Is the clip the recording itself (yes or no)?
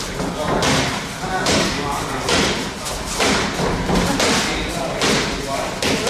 yes